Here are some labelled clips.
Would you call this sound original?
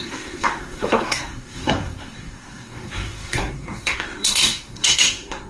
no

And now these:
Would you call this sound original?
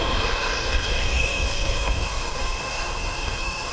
no